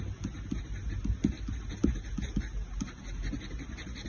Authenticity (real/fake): real